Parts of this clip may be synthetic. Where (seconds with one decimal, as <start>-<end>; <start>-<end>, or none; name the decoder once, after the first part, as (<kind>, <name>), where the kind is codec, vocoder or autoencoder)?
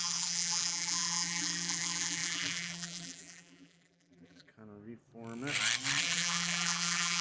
0.0-4.5 (vocoder, BigVGAN v2); 6.0-7.2